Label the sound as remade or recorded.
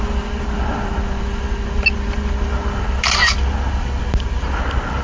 recorded